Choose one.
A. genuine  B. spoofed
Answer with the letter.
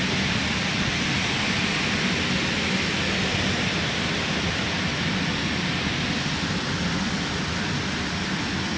A